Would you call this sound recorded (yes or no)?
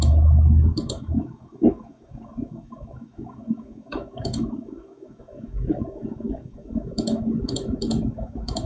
no